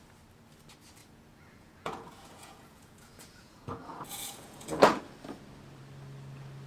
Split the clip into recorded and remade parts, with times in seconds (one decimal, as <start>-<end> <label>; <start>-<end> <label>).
0.0-1.0 recorded; 1.0-5.0 remade; 5.0-6.7 recorded